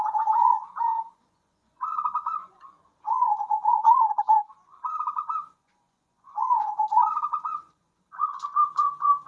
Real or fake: fake